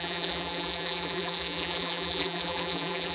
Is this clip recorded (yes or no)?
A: no